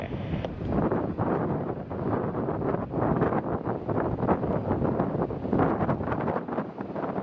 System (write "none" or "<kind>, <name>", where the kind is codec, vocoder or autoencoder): none